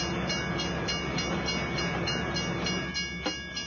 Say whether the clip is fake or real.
real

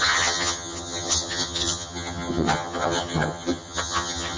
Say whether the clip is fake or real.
fake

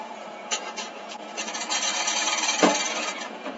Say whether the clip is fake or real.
fake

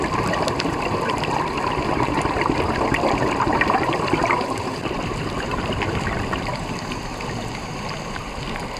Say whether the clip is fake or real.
fake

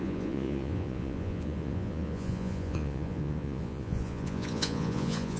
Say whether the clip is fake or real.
fake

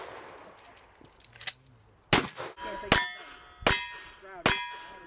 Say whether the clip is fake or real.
real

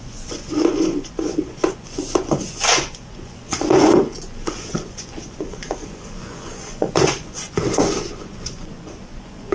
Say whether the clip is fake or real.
fake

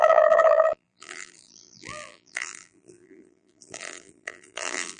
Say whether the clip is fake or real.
fake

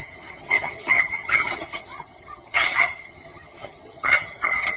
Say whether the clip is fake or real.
fake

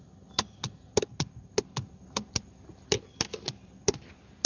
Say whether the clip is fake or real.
real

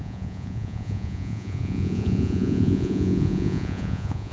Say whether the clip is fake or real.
fake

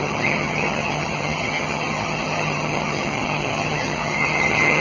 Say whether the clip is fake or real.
fake